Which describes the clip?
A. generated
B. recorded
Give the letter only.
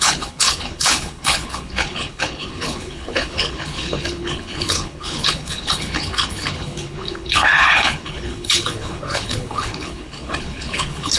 A